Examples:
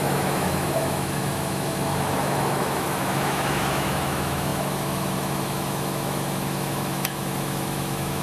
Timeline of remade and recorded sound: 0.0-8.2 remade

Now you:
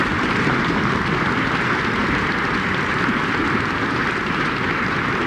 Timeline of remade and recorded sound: 0.0-2.0 recorded; 2.0-5.3 remade